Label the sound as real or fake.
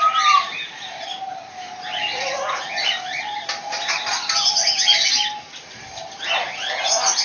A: real